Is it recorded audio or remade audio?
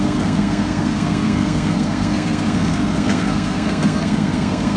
remade